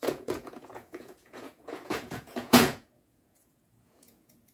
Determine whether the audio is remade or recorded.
remade